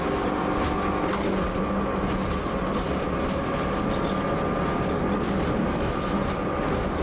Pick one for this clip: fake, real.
real